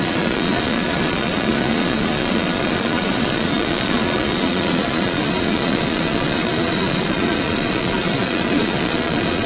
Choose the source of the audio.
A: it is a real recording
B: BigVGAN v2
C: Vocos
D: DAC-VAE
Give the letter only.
C